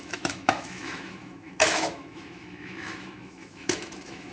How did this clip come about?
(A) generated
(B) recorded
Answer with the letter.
A